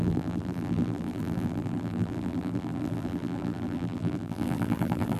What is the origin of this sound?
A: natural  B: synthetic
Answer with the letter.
B